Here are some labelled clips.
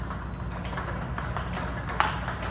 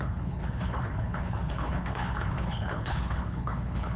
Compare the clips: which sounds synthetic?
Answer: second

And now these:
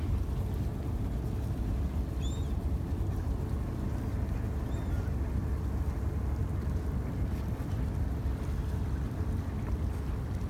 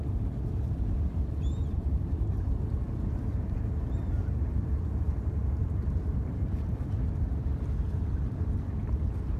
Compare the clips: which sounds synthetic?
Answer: second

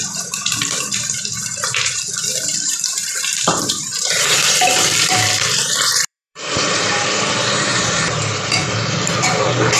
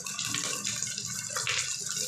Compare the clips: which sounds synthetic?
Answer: first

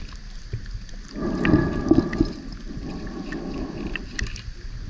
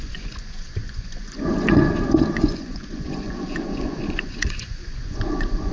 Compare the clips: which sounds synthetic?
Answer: second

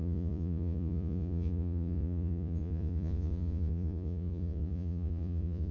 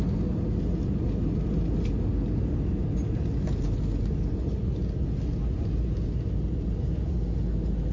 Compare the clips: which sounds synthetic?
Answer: first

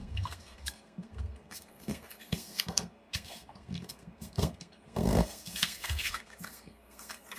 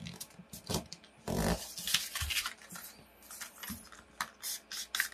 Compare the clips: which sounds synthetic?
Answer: first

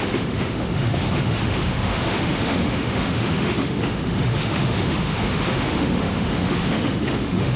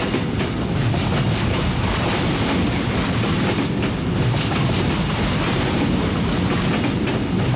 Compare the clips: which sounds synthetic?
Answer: first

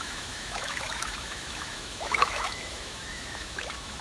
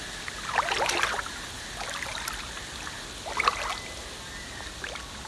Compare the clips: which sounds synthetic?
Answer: first